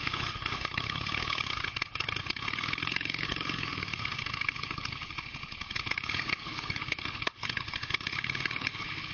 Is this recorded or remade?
remade